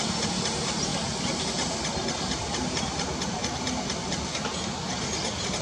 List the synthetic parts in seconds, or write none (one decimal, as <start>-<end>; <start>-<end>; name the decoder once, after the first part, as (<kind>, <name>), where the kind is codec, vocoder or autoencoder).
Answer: 0.0-0.9 (vocoder, BigVGAN v2); 1.4-5.6